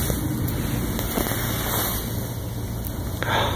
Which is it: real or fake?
real